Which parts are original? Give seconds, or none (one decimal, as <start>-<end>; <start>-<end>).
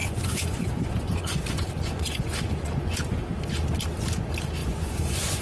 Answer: 3.2-4.6